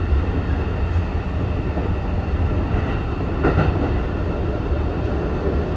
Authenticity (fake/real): real